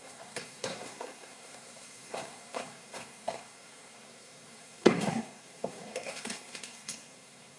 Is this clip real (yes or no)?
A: no